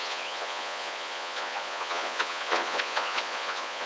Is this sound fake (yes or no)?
yes